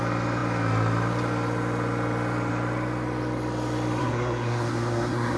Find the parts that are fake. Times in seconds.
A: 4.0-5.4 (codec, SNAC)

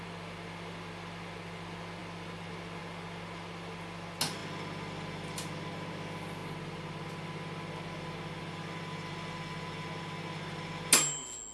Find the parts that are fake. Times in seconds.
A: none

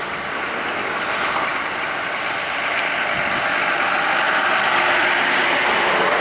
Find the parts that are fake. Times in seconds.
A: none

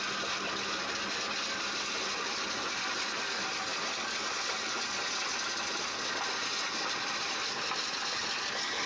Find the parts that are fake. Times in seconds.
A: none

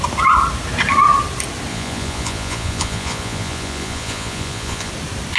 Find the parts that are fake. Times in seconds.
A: 1.7-4.9 (vocoder, Vocos)

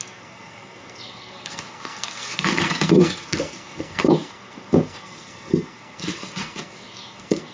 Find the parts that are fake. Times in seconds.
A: 0.0-7.5 (codec, SNAC)